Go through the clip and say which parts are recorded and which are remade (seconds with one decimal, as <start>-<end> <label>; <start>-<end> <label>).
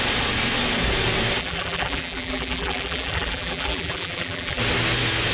0.0-1.4 recorded; 1.4-4.6 remade; 4.6-5.3 recorded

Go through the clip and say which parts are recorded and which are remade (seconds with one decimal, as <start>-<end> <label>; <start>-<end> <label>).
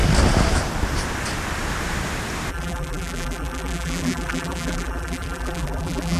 0.0-2.5 recorded; 2.5-6.2 remade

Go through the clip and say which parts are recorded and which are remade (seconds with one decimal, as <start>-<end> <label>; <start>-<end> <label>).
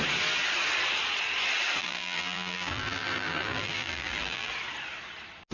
0.0-1.8 recorded; 1.8-4.5 remade; 4.5-5.5 recorded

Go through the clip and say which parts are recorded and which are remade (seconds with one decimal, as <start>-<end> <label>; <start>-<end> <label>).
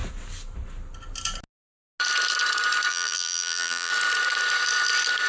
0.0-2.9 recorded; 2.9-3.9 remade; 3.9-5.3 recorded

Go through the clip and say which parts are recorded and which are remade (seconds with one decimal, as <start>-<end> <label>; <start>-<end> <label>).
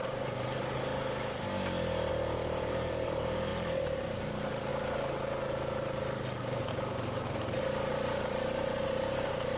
0.0-0.9 remade; 0.9-2.1 recorded; 2.1-4.7 remade; 4.7-7.6 recorded; 7.6-9.6 remade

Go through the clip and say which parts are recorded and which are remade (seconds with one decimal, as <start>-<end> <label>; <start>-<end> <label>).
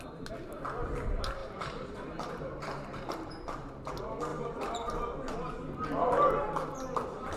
0.0-1.4 recorded; 1.4-3.9 remade; 3.9-4.3 recorded; 4.3-4.9 remade; 4.9-7.4 recorded